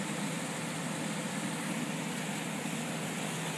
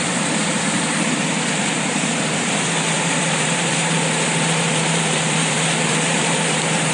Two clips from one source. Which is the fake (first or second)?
second